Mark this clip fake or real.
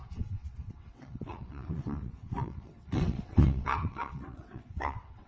fake